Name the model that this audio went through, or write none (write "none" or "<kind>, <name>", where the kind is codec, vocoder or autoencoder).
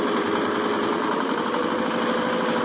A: vocoder, BigVGAN v2